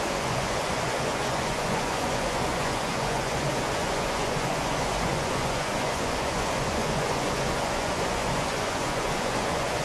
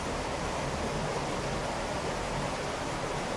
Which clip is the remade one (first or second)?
first